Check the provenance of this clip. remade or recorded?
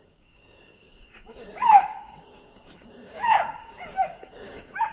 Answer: remade